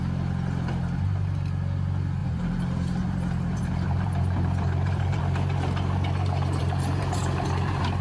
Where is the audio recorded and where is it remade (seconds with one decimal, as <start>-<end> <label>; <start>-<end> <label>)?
0.0-2.2 recorded; 2.2-5.2 remade; 5.2-6.6 recorded; 6.6-7.2 remade; 7.2-8.0 recorded